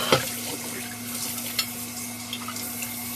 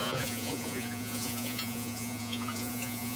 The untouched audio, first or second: first